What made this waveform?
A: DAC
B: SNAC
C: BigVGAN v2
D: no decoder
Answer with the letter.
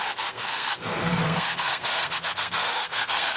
B